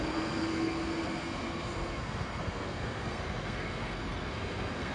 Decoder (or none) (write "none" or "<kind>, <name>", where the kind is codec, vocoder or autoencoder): codec, SNAC